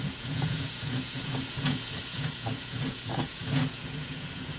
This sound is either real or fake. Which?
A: fake